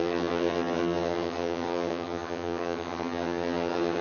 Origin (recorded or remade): remade